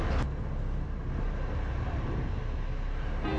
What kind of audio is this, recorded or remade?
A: recorded